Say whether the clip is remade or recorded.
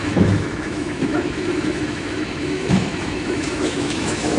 remade